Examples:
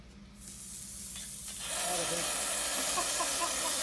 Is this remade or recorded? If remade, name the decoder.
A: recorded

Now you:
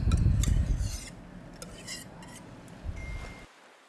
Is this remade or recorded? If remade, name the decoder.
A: recorded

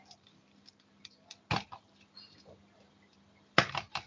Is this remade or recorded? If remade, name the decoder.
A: recorded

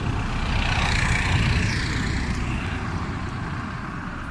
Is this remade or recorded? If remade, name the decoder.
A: remade, vocoder, BigVGAN v2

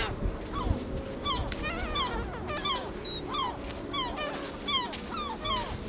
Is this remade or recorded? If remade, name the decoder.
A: recorded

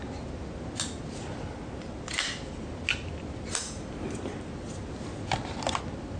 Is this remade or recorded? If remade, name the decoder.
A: recorded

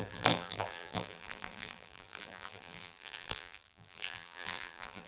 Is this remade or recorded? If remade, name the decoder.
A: remade, vocoder, BigVGAN v2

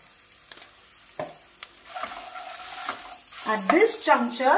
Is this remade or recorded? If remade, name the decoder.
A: recorded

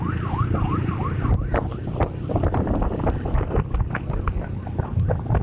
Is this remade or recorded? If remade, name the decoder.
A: recorded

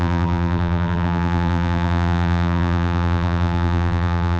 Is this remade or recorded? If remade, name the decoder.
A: remade, vocoder, BigVGAN v2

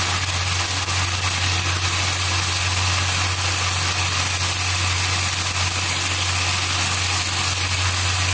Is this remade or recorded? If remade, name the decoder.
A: recorded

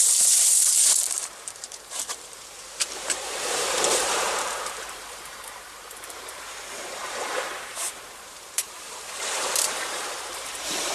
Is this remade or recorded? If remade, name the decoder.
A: remade, vocoder, BigVGAN v2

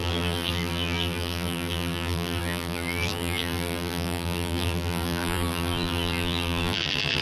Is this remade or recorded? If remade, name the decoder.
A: remade, vocoder, BigVGAN v2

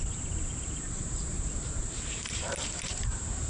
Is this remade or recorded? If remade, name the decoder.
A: remade, vocoder, BigVGAN v2